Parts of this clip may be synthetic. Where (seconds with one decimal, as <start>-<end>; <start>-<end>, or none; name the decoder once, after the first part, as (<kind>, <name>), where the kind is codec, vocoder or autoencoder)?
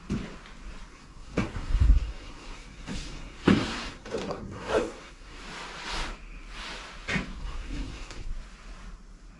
0.9-5.4 (codec, SNAC); 7.4-8.3